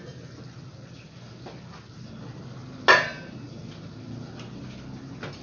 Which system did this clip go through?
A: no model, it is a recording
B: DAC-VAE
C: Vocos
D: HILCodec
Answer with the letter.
A